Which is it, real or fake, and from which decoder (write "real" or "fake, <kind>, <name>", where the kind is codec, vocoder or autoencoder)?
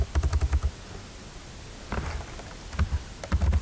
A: real